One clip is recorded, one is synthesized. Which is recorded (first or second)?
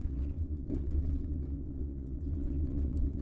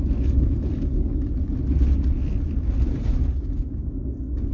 second